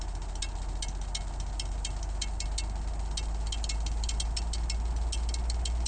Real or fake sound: real